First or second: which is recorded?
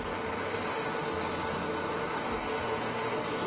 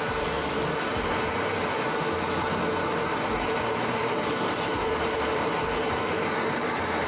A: first